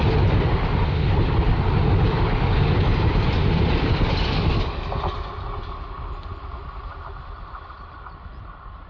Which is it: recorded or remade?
recorded